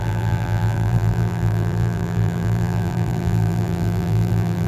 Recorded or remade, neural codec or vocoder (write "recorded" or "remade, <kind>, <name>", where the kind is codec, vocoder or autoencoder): remade, vocoder, BigVGAN v2